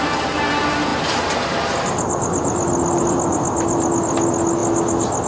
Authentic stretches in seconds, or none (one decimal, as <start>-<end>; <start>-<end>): 0.0-5.3